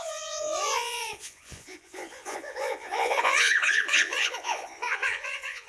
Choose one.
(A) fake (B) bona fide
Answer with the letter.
A